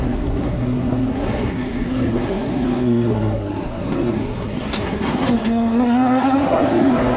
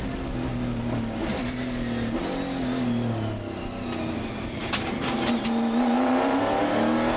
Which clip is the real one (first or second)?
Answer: second